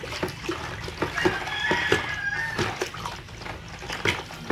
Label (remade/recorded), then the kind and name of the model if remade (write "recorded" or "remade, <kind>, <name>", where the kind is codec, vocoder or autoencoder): recorded